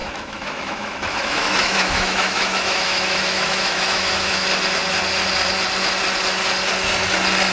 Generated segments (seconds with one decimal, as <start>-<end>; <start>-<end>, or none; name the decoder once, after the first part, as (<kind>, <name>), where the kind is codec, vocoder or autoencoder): 0.0-4.5 (autoencoder, DAC-VAE)

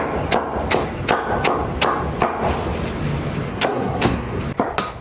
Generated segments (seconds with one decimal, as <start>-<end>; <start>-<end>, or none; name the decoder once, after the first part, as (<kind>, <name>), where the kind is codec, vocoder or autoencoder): 3.5-4.4 (codec, SNAC)

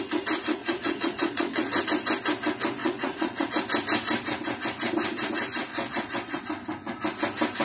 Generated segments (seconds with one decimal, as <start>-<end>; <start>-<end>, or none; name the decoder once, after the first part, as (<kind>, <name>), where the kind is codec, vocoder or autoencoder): 0.6-1.8 (vocoder, Vocos); 2.8-3.5; 5.7-6.4

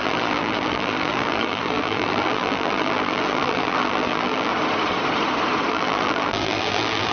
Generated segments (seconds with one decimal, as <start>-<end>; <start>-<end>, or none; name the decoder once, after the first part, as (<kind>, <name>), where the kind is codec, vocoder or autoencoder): 0.0-4.5 (vocoder, BigVGAN v2); 5.7-7.1

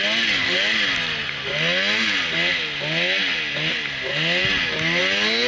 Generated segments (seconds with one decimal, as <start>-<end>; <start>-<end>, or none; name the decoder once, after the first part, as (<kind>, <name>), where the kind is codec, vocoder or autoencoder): none